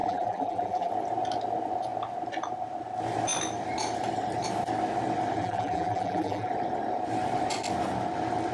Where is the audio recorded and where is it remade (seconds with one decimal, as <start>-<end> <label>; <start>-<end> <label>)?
0.0-0.9 remade; 0.9-5.4 recorded; 5.4-6.5 remade; 6.5-8.5 recorded